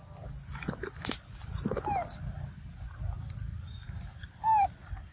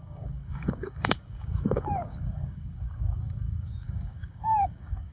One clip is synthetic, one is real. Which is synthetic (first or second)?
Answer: second